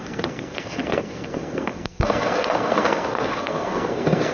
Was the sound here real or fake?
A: fake